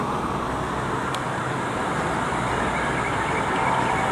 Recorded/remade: recorded